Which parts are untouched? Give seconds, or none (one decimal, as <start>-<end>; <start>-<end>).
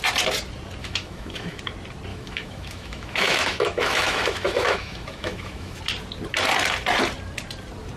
0.0-0.8; 1.6-2.1; 5.8-8.0